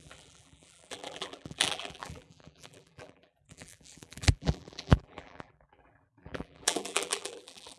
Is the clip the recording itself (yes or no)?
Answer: no